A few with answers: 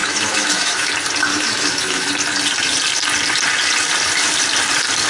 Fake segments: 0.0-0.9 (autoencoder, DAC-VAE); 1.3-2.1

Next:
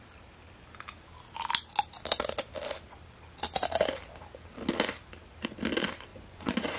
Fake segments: 6.1-6.8 (vocoder, Vocos)

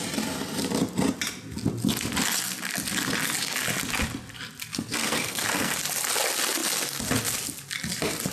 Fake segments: 4.7-5.8 (codec, SNAC)

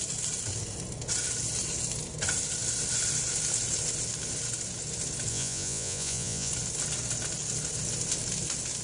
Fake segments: 5.3-6.5 (vocoder, Vocos)